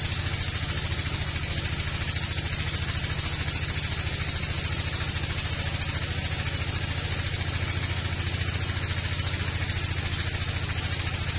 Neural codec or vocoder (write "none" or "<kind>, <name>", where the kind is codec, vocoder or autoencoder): none